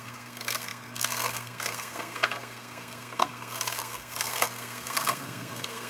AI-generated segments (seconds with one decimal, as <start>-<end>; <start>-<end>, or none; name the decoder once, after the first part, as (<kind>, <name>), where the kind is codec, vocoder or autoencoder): 0.0-5.9 (codec, SNAC)

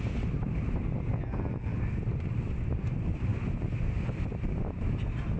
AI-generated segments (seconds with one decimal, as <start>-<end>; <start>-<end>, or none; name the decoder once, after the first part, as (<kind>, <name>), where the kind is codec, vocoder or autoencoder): none

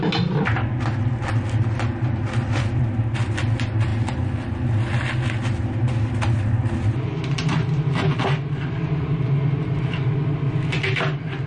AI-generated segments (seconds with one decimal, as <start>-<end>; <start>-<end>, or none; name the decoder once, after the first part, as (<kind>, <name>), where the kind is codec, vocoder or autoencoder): none